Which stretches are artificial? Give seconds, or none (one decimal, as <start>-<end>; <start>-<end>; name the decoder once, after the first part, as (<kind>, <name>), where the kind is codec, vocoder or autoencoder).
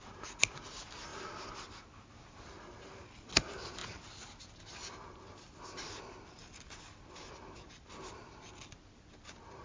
none